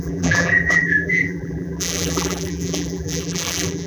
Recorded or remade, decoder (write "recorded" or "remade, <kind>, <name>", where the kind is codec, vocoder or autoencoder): remade, vocoder, BigVGAN v2